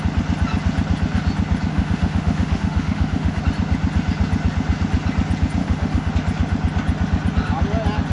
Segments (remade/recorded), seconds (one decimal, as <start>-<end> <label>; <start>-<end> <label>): 0.0-1.7 recorded; 1.7-3.4 remade; 3.4-5.6 recorded; 5.6-6.1 remade; 6.1-8.1 recorded